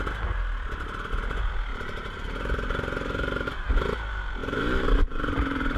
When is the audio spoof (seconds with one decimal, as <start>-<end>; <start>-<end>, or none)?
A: 1.7-3.7; 4.4-5.8